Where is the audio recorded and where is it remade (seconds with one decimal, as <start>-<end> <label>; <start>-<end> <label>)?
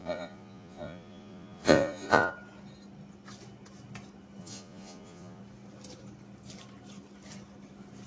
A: 0.0-2.3 remade; 2.3-4.4 recorded; 4.4-5.4 remade; 5.4-8.1 recorded